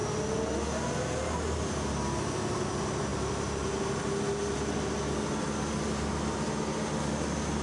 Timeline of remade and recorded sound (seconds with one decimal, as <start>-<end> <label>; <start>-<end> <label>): 0.0-7.6 recorded